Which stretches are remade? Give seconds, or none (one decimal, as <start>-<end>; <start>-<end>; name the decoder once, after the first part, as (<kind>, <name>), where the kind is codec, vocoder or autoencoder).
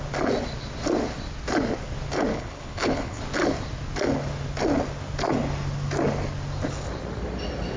2.3-3.2 (codec, HILCodec)